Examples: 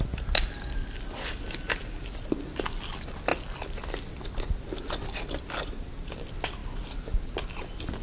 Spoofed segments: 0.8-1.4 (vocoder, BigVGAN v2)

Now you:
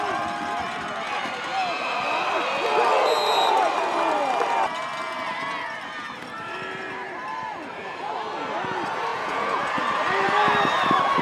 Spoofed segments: 9.1-9.6 (vocoder, Vocos)

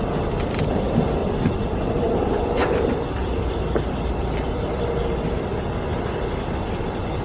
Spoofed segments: 1.2-5.5 (vocoder, BigVGAN v2)

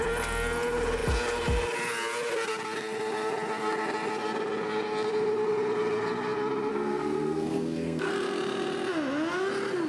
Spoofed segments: 6.7-8.1 (codec, SNAC)

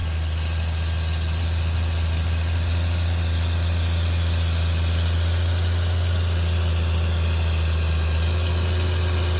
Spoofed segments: none